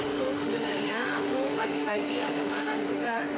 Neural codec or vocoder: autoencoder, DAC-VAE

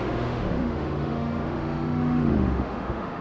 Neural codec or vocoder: autoencoder, DAC-VAE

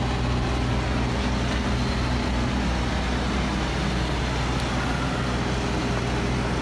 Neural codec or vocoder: none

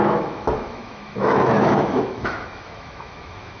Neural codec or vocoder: autoencoder, DAC-VAE